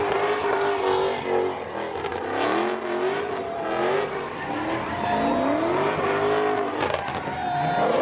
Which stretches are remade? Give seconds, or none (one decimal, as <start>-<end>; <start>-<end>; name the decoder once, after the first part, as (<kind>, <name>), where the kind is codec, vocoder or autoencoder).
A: none